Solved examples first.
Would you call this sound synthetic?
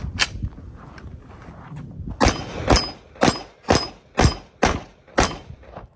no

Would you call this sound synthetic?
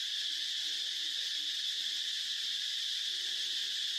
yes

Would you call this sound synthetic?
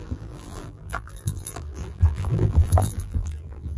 yes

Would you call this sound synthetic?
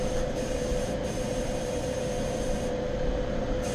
yes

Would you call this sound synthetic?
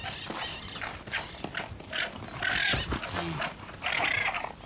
no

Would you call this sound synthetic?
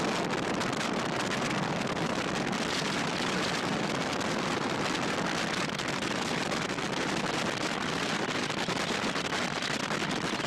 no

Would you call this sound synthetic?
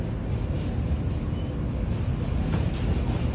no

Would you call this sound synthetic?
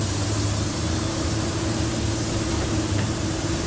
yes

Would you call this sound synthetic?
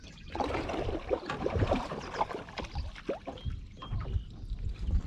yes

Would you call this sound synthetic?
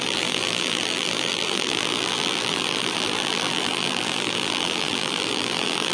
yes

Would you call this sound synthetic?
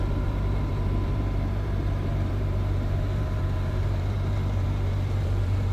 yes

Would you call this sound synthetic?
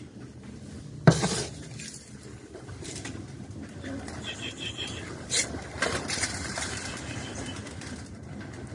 yes